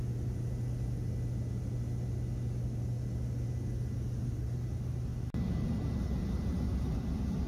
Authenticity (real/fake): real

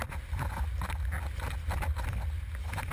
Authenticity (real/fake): real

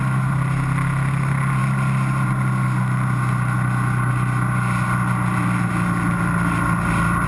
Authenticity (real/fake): real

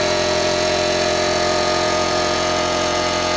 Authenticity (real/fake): fake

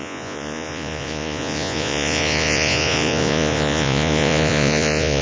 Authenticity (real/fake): fake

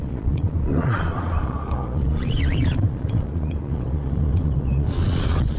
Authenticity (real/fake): fake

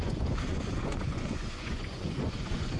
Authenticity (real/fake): fake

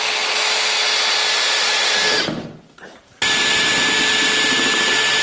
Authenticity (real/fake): real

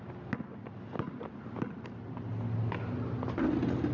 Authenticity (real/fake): real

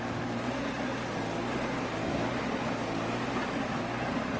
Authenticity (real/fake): real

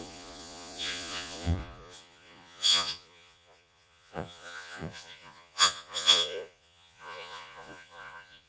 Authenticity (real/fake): fake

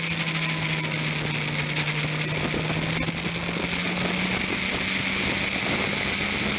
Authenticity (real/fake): real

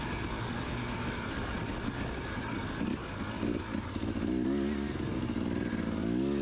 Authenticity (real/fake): real